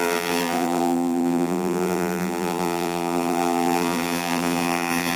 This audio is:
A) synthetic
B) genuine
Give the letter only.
A